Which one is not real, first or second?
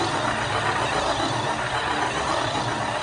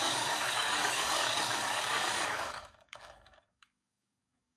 second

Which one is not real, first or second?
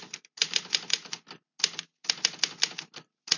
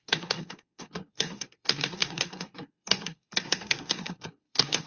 second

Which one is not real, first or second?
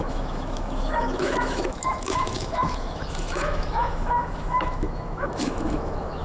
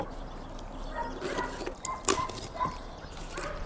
first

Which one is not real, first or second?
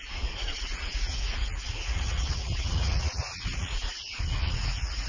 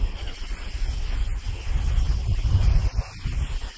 first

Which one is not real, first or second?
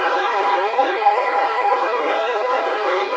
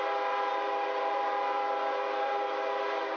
first